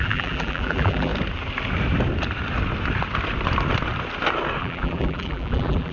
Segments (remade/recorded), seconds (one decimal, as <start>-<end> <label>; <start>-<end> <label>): 0.0-1.1 remade; 1.1-4.6 recorded; 4.6-5.9 remade